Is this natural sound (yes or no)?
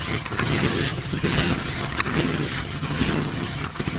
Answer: no